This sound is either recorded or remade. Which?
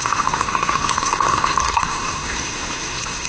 remade